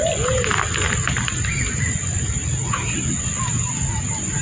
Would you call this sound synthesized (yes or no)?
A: no